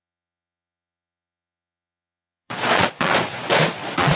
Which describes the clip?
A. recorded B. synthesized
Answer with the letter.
B